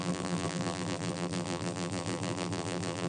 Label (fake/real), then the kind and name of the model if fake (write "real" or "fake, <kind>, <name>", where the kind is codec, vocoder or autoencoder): fake, vocoder, BigVGAN v2